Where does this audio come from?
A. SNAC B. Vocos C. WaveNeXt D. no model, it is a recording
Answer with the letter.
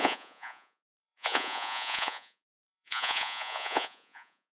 B